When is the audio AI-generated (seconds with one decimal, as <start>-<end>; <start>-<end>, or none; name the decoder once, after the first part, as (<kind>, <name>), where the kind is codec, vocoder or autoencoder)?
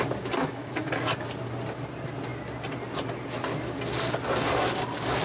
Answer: 0.4-0.9 (autoencoder, DAC-VAE)